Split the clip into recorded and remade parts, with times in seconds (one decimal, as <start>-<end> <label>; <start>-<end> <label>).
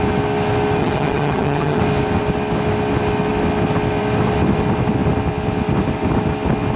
0.0-0.8 recorded; 0.8-1.8 remade; 1.8-6.8 recorded